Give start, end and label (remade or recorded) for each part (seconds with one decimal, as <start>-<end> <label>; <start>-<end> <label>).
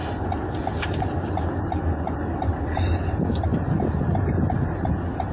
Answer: 0.0-5.3 recorded